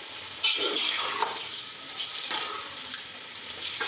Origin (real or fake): real